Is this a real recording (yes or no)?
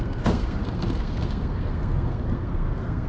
no